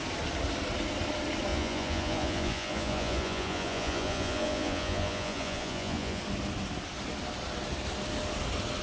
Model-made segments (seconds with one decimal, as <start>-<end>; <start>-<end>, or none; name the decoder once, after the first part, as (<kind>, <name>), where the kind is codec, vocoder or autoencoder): 1.5-6.2 (vocoder, Vocos)